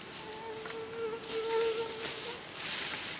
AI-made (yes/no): no